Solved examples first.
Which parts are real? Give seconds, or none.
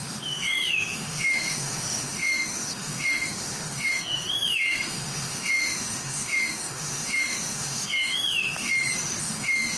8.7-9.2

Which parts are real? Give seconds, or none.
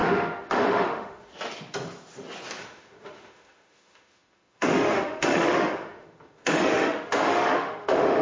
1.3-2.6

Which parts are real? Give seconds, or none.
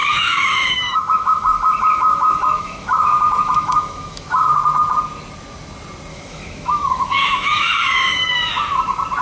4.5-6.1; 8.5-9.2